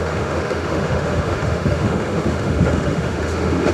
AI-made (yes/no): yes